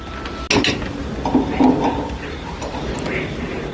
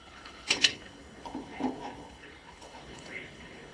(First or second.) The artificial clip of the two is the second